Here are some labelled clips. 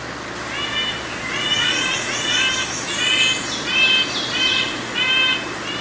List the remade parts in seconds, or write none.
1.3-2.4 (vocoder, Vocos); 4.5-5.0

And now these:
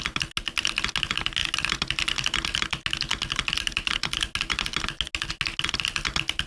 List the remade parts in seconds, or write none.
none

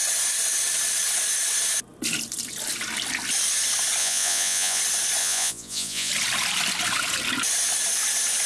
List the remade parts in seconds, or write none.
4.0-4.8 (vocoder, Vocos); 5.2-6.1

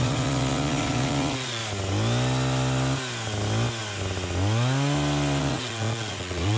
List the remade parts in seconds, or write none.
0.0-1.6 (vocoder, Vocos); 5.4-6.6

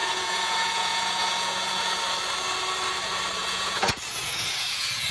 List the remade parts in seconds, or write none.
0.0-2.0 (vocoder, Vocos); 3.4-5.1

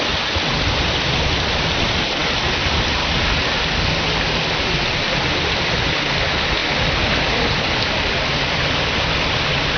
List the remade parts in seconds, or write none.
none